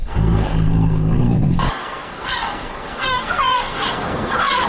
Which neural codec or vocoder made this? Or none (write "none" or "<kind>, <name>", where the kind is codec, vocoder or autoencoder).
codec, SNAC